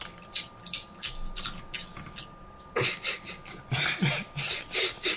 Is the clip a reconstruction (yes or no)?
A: no